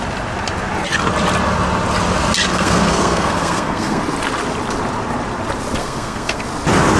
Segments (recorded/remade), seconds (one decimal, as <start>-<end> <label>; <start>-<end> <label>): 0.0-2.5 recorded; 2.5-4.0 remade; 4.0-5.8 recorded; 5.8-6.4 remade; 6.4-7.0 recorded